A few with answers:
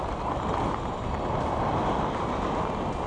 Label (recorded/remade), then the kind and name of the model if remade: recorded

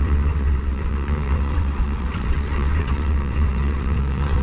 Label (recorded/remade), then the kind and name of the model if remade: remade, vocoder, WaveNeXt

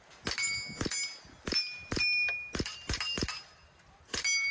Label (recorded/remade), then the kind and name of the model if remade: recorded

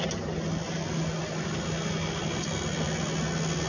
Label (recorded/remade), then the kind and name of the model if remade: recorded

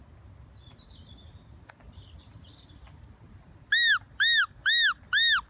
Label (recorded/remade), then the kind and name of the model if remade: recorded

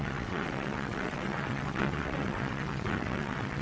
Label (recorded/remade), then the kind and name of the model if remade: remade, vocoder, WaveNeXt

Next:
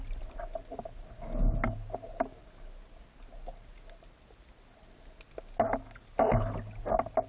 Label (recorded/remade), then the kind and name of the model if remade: recorded